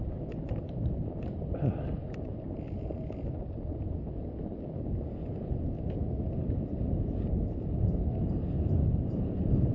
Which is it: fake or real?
real